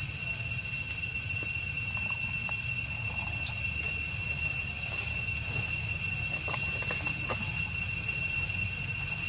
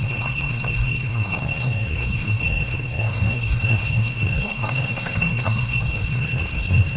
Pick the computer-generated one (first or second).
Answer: second